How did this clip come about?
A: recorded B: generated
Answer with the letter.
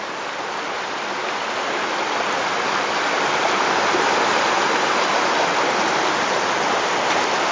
A